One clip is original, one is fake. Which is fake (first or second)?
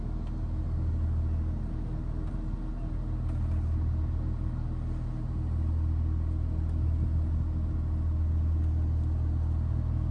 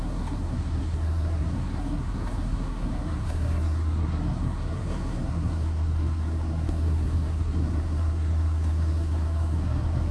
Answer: second